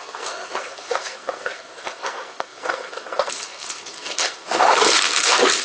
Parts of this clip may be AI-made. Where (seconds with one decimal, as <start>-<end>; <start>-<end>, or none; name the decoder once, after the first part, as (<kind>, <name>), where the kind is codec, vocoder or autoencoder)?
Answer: 0.0-5.6 (codec, SNAC)